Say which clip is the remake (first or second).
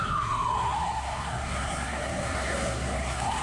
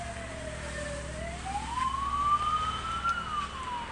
first